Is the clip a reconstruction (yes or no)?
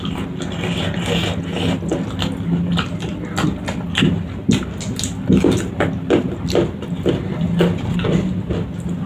no